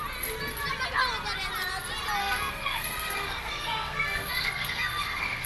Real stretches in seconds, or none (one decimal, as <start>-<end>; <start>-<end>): 0.0-2.2

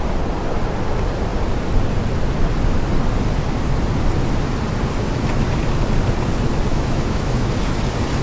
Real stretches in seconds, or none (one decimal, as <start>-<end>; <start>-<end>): 0.0-6.7; 7.5-8.2

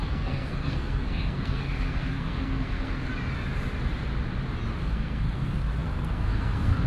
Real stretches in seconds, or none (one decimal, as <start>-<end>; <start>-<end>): 3.1-4.8

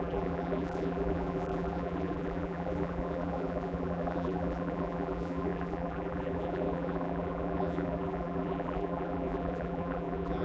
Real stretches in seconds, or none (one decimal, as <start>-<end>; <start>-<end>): none